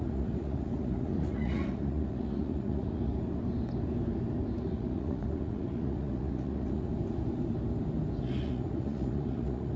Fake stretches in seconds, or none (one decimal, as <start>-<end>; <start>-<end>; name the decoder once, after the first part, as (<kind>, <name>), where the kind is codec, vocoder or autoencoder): 0.0-3.1 (vocoder, Vocos); 4.6-6.9; 8.2-9.8